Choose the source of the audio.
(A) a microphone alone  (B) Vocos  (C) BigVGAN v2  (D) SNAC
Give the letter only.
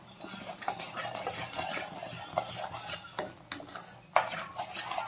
A